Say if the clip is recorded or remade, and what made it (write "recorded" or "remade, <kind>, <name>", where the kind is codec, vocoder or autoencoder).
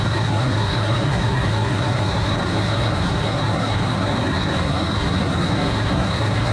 remade, codec, SNAC